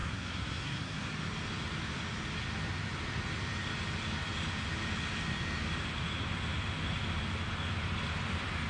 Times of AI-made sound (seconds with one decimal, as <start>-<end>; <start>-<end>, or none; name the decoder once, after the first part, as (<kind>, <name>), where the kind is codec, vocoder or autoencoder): 0.0-1.1 (codec, SNAC)